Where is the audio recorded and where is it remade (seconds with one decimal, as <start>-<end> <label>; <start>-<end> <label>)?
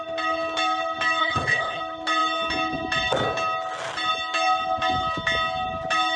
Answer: 0.0-1.2 recorded; 1.2-1.8 remade; 1.8-6.2 recorded